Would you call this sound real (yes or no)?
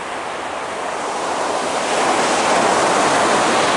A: yes